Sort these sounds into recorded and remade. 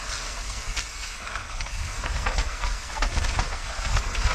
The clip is remade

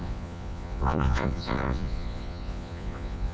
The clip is remade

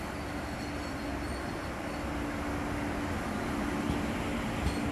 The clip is recorded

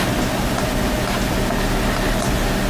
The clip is recorded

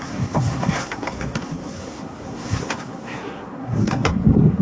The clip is remade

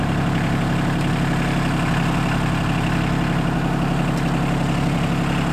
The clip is recorded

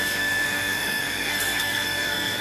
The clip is remade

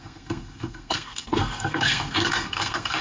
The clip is remade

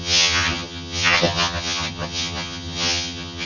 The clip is remade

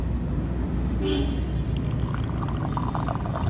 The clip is recorded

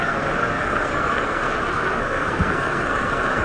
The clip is remade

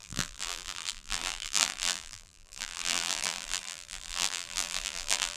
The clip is remade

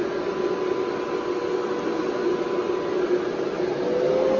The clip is recorded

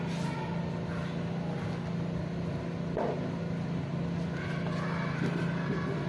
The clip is recorded